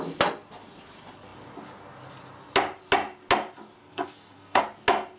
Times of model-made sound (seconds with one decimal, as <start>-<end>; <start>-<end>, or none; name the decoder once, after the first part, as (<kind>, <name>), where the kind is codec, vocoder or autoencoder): 3.8-4.6 (codec, SNAC)

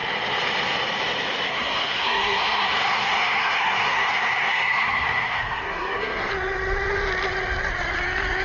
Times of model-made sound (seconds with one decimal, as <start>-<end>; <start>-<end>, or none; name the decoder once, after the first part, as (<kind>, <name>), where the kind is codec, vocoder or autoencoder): 1.5-6.3 (codec, SNAC)